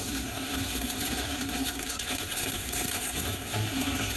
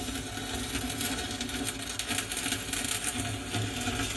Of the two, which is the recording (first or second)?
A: second